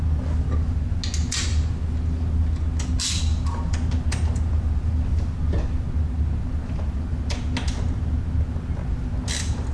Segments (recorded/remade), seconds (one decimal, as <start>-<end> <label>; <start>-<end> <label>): 0.0-9.7 recorded